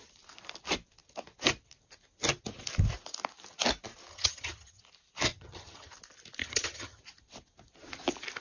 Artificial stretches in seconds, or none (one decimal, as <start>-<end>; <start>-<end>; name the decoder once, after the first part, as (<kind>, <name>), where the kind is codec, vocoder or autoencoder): 4.1-4.8 (vocoder, HiFi-GAN); 5.3-5.9; 6.4-7.0

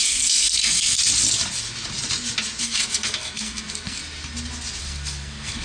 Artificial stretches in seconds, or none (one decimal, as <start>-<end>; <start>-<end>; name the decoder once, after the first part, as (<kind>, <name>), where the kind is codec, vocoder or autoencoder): 0.0-1.0 (codec, SNAC); 2.6-4.0; 4.8-5.6

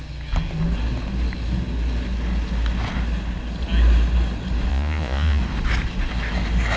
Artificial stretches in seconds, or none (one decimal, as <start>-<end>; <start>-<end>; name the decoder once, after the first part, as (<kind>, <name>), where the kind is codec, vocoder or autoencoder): 4.7-5.4 (vocoder, Vocos)

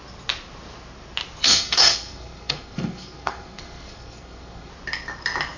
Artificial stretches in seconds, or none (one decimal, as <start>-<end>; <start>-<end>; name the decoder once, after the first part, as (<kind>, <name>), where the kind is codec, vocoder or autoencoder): 1.4-4.7 (codec, SNAC)

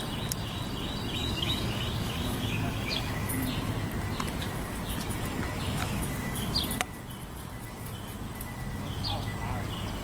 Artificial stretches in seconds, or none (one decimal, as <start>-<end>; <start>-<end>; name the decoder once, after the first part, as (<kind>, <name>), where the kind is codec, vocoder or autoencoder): 1.2-3.3 (codec, DAC); 5.8-6.5

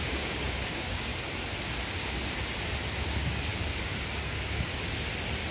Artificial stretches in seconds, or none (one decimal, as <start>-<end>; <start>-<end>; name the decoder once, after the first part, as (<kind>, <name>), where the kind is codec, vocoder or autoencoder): 0.0-1.1 (codec, DAC); 3.1-4.7

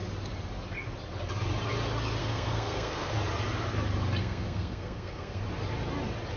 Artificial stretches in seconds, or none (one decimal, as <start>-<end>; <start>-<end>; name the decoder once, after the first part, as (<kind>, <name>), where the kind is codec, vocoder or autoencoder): 2.2-3.1 (codec, SNAC); 4.2-5.4